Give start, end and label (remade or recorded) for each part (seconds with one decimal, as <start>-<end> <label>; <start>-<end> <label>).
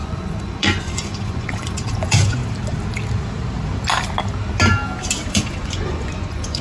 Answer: 0.0-2.4 remade; 2.4-5.3 recorded; 5.3-6.6 remade